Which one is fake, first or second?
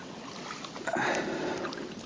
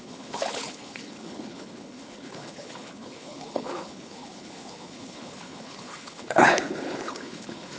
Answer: second